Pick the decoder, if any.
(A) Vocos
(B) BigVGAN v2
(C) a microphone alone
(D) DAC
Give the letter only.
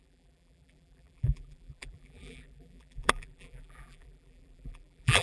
B